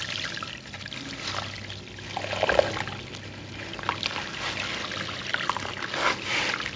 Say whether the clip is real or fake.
real